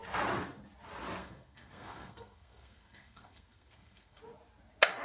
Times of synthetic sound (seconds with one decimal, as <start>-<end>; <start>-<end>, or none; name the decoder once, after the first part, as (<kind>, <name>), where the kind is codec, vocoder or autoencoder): 1.2-4.2 (codec, SNAC)

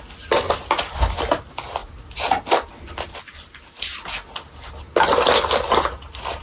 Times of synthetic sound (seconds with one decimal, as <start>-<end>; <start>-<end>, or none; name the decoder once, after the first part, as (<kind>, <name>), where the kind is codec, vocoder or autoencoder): none

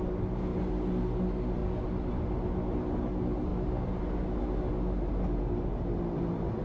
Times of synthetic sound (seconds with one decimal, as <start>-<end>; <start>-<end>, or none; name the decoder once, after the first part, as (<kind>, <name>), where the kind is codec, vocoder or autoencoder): none

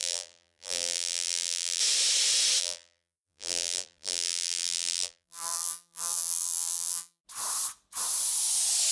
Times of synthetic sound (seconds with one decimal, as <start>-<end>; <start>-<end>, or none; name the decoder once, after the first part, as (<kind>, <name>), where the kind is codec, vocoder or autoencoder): 0.0-1.8 (vocoder, BigVGAN v2); 2.6-7.2

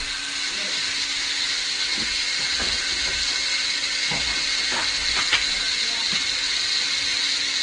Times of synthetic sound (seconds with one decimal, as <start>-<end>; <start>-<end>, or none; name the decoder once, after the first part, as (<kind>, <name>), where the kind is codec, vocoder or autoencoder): none

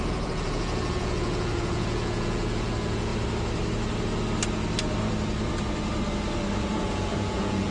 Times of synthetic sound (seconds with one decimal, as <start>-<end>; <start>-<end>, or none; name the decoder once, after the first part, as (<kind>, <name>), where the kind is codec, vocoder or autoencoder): 0.0-3.1 (vocoder, Vocos); 6.6-7.7

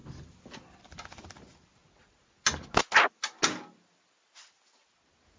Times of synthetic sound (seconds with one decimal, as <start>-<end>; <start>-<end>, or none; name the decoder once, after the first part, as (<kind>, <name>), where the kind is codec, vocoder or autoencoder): none